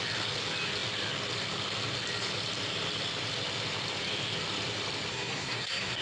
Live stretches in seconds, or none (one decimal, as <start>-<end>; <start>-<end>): 0.0-5.1